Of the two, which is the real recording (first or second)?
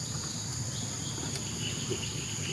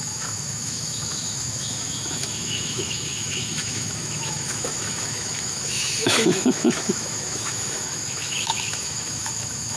first